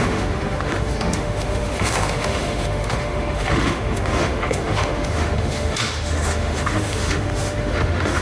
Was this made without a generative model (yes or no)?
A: no